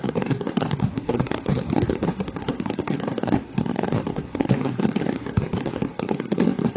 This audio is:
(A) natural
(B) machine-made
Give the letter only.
B